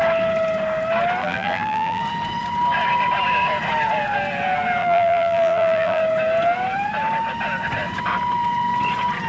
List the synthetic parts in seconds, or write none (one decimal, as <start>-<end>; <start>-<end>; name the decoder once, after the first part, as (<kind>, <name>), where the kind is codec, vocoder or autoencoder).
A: 1.2-2.0 (vocoder, BigVGAN v2); 4.8-6.0